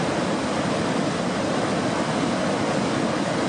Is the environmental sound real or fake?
real